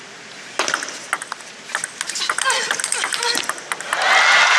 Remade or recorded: recorded